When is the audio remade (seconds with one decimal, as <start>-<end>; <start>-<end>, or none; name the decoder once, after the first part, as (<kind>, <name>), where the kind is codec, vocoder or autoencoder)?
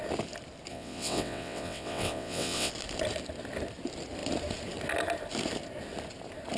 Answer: 0.7-2.7 (vocoder, WaveNeXt)